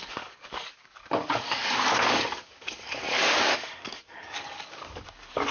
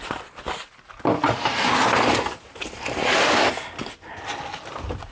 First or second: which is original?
second